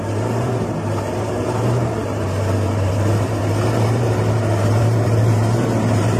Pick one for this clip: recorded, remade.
remade